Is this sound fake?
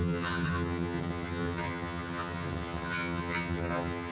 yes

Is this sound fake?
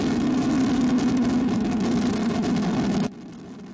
no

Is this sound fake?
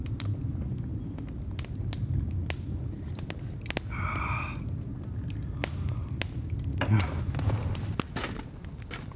no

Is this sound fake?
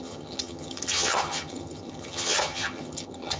yes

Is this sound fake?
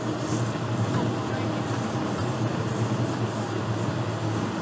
no